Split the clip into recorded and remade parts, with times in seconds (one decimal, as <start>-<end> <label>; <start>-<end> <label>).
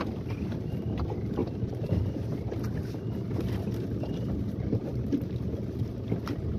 0.0-6.6 recorded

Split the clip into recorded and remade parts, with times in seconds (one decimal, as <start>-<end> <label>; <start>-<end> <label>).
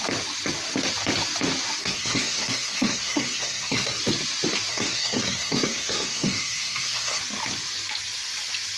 0.0-1.8 recorded; 1.8-4.0 remade; 4.0-4.7 recorded; 4.7-7.2 remade; 7.2-8.8 recorded